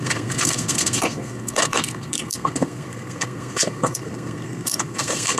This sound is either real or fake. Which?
fake